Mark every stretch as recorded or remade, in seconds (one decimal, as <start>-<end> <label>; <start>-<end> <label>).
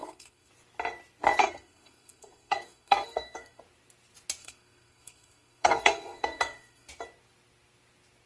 0.0-0.5 remade; 0.5-1.4 recorded; 1.4-3.6 remade; 3.6-4.4 recorded; 4.4-6.9 remade; 6.9-8.3 recorded